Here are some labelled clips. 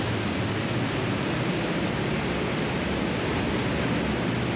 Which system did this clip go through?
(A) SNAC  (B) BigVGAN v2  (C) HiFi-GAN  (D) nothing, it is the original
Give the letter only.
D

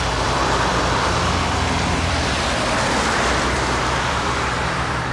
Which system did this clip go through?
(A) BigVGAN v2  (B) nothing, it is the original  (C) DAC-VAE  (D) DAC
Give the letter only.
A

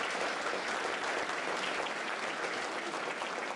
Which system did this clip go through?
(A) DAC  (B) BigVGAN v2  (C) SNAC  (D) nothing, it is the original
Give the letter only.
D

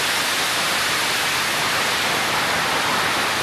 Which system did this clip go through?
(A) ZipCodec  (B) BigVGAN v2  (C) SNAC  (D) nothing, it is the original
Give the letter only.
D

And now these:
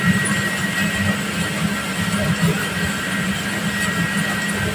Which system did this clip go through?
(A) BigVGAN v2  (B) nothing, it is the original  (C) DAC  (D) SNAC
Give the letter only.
B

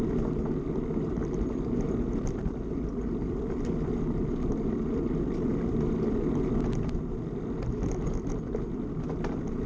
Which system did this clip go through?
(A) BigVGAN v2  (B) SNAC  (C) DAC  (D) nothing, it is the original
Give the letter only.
D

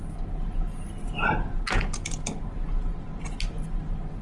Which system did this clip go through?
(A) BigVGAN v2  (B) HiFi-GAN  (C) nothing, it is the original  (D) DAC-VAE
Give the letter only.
C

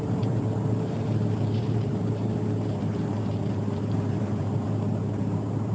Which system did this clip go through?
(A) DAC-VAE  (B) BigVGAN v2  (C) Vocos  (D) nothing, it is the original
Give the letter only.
B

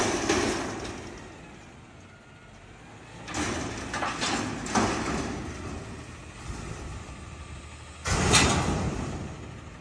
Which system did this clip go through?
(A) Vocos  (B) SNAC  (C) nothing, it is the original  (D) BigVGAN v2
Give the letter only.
C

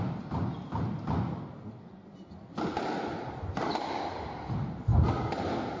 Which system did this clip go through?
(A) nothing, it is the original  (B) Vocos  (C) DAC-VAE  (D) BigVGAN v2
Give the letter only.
A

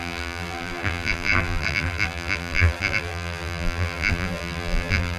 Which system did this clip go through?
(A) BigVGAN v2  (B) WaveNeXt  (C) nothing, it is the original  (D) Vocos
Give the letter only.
A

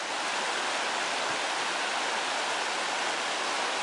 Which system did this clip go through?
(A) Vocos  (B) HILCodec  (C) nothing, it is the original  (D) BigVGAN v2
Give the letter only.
C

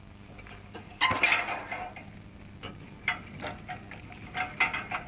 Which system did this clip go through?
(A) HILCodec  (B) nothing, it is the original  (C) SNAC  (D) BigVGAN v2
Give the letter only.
B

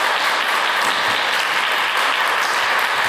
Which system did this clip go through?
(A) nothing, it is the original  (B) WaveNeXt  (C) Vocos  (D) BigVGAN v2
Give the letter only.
A